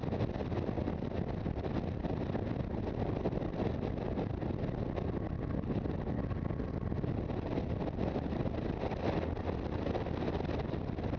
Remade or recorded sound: recorded